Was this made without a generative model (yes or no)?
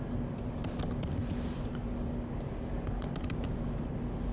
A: yes